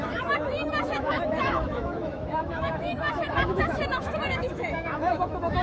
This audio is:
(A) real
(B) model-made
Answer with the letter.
B